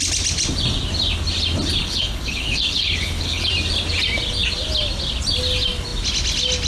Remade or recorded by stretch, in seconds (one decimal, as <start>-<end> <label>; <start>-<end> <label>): 0.0-1.8 recorded; 1.8-3.5 remade; 3.5-6.7 recorded